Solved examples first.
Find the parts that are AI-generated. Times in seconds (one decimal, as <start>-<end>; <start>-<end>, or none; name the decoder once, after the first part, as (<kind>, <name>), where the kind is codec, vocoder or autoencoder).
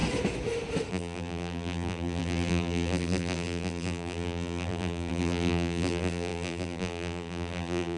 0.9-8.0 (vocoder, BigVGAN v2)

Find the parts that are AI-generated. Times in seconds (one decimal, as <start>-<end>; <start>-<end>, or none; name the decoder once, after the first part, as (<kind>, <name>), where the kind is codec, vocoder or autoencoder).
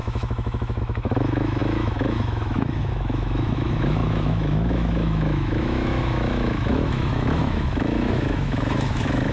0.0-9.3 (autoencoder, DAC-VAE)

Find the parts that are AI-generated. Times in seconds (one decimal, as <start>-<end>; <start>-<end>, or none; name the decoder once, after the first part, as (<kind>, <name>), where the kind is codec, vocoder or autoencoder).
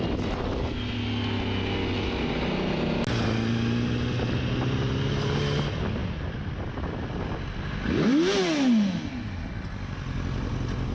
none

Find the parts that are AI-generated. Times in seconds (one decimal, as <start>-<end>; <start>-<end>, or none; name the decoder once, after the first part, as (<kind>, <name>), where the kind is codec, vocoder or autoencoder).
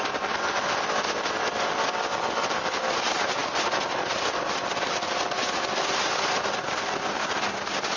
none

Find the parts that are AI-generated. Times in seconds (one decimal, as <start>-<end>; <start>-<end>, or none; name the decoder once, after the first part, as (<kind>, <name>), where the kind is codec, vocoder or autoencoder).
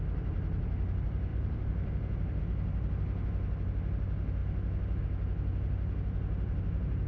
1.3-2.4 (vocoder, BigVGAN v2)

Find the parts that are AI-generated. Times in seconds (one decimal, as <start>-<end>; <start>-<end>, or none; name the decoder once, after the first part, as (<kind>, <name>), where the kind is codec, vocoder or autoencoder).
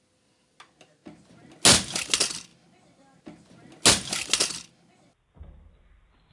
none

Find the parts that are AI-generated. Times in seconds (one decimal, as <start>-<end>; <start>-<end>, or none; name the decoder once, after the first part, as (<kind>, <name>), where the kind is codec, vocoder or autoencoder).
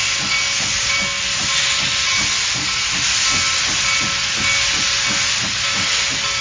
none